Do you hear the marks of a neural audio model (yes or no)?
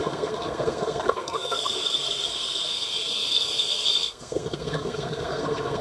yes